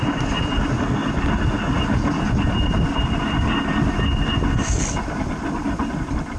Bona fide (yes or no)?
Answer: yes